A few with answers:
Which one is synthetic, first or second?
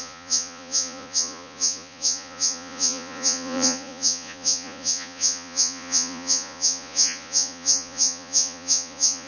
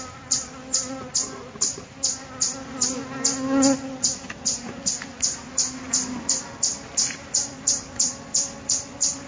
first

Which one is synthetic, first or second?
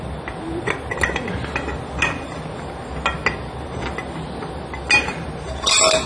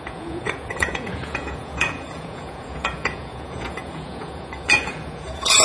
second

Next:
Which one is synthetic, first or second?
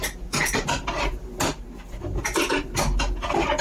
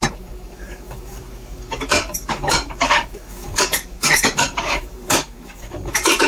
second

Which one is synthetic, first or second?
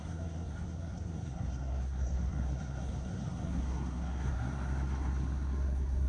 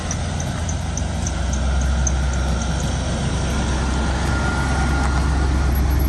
first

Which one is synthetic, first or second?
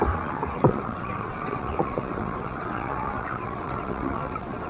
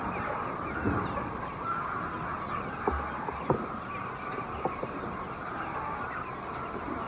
first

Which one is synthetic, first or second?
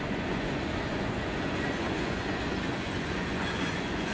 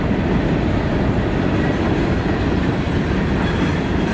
first